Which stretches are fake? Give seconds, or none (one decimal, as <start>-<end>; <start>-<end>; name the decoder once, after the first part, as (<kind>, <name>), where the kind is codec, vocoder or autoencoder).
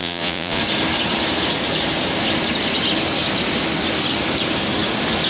0.0-0.6 (vocoder, Vocos)